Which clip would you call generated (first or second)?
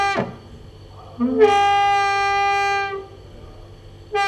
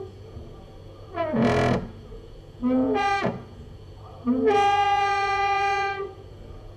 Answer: second